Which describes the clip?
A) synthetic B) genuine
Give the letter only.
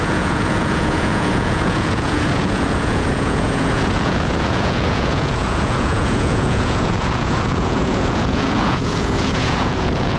A